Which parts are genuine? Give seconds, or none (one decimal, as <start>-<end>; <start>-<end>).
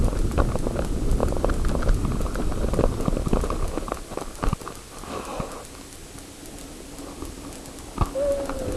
0.0-8.8